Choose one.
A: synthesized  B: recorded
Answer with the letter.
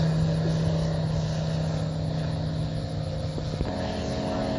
B